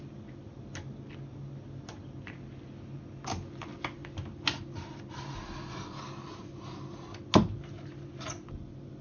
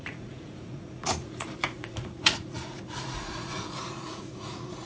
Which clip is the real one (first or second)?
first